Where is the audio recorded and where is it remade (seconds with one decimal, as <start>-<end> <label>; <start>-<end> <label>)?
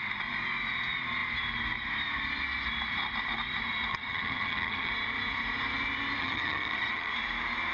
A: 0.0-3.9 recorded; 3.9-4.9 remade; 4.9-6.2 recorded; 6.2-7.1 remade; 7.1-7.7 recorded